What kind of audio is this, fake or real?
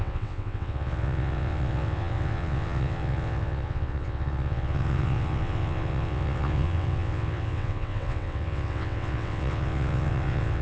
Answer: fake